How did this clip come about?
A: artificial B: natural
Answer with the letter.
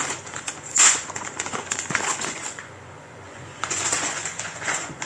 A